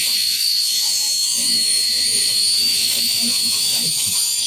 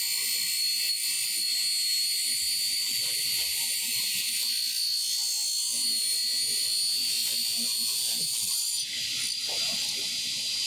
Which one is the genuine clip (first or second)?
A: second